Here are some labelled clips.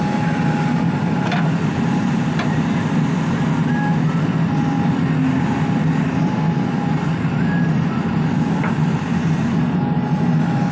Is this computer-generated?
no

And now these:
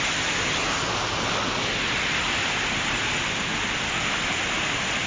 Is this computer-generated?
no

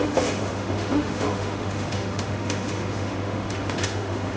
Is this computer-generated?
yes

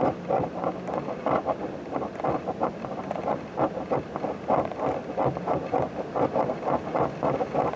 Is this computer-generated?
no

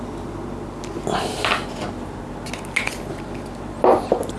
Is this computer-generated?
no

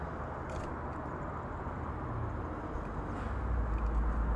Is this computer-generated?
no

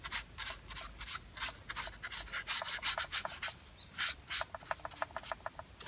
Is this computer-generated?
no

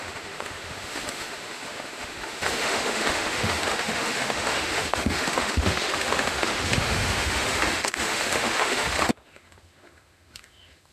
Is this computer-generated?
yes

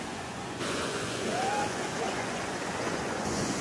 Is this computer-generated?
yes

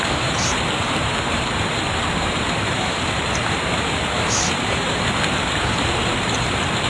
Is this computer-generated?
yes